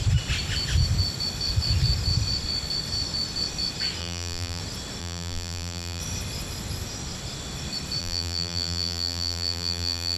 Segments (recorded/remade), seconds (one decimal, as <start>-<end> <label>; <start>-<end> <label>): 0.0-4.0 recorded; 4.0-4.6 remade; 4.6-5.0 recorded; 5.0-6.0 remade; 6.0-8.0 recorded; 8.0-10.2 remade

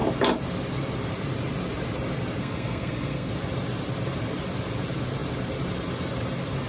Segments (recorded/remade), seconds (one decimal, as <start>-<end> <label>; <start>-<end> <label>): 0.0-2.4 recorded; 2.4-3.3 remade; 3.3-6.7 recorded

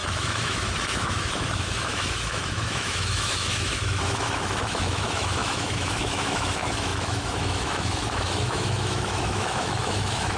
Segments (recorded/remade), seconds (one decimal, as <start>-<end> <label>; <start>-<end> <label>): 0.0-10.4 remade